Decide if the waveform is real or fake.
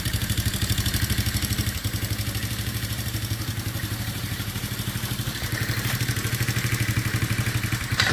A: fake